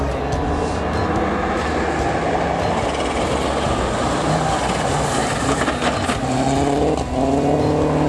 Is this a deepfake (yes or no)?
no